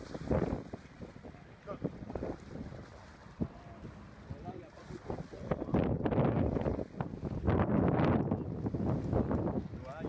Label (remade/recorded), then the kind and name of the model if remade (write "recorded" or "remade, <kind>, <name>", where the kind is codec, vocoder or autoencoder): recorded